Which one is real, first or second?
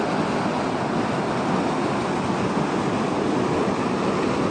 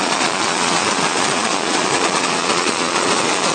first